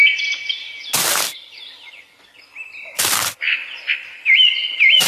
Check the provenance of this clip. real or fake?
real